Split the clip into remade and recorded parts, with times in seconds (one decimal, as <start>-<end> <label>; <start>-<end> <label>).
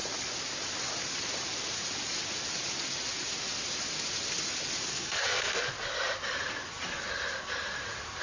0.0-4.9 recorded; 4.9-5.6 remade; 5.6-8.2 recorded